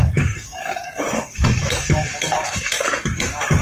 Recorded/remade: remade